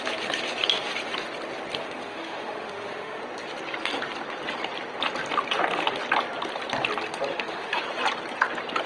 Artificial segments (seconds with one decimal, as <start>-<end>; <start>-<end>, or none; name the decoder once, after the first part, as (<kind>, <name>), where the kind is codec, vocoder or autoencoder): 1.8-3.2 (autoencoder, DAC-VAE); 7.3-7.8